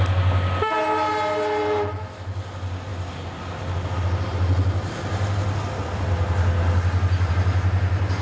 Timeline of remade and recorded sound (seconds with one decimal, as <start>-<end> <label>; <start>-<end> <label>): 0.0-8.2 recorded